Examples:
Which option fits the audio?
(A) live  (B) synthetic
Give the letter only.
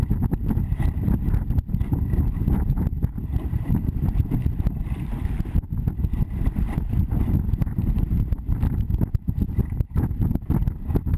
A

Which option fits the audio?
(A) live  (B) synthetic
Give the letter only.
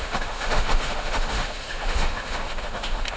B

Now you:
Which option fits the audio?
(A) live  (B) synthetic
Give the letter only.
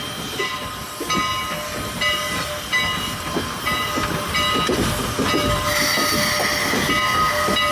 A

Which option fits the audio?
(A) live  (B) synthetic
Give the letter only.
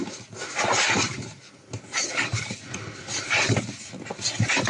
A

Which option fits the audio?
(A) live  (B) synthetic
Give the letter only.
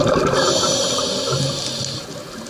A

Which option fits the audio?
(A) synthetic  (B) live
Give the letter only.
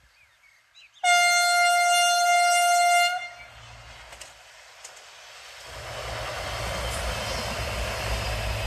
B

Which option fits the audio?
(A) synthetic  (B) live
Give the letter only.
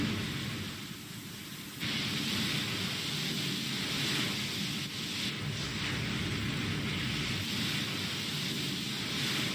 B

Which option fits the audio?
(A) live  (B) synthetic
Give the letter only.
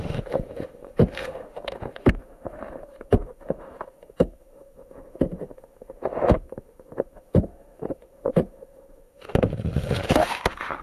B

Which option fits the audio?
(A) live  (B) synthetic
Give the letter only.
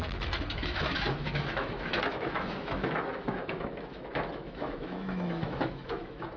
B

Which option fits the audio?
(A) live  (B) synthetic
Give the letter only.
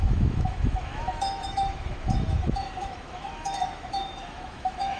B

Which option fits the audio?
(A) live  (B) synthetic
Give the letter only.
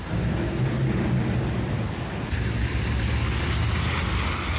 A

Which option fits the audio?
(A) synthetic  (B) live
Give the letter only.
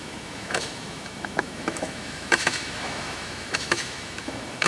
A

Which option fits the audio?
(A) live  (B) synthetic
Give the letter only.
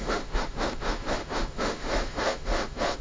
B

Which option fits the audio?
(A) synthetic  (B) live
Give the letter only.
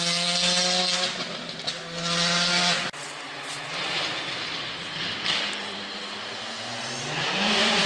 B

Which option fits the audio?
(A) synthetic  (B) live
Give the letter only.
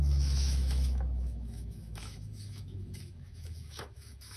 A